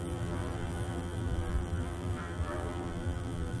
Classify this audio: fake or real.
fake